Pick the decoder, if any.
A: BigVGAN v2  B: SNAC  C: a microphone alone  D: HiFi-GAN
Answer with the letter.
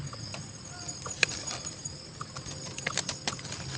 C